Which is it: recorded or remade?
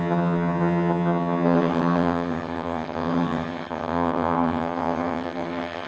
remade